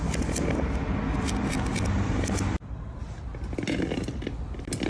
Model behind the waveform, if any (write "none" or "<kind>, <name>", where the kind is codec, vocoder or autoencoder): none